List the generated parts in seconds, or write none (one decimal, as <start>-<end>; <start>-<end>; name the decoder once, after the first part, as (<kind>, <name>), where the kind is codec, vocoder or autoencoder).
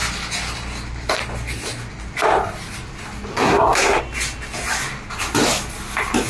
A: 3.3-4.0 (codec, SNAC)